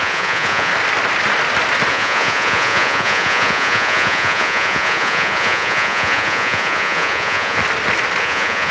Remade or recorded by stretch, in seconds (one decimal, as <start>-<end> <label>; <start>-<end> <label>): 0.0-0.7 remade; 0.7-1.9 recorded; 1.9-7.6 remade; 7.6-8.2 recorded; 8.2-8.7 remade